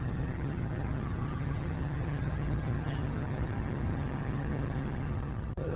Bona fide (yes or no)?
no